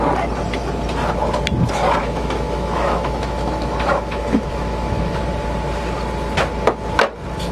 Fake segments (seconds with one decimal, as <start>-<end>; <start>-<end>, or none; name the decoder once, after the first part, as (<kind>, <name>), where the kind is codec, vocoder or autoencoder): 2.0-5.2 (autoencoder, DAC-VAE)